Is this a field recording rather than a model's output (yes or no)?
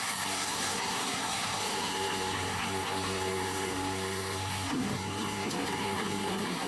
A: no